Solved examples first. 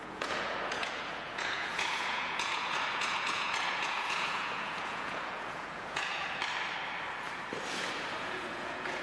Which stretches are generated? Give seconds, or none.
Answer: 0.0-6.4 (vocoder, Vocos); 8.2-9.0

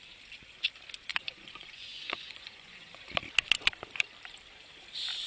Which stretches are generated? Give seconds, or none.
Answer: 1.1-2.9 (vocoder, Vocos)

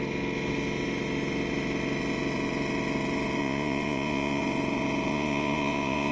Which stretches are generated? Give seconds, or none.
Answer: 3.4-4.4 (vocoder, Vocos); 5.1-6.1